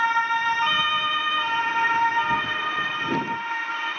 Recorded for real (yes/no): yes